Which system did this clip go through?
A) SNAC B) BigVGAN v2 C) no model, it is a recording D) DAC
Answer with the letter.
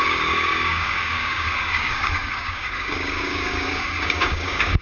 D